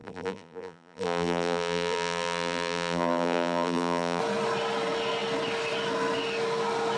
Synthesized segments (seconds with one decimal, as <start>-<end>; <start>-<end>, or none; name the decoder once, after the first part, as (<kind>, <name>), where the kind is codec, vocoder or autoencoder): 0.0-4.2 (vocoder, BigVGAN v2)